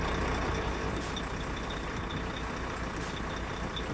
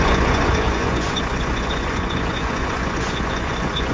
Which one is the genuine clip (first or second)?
first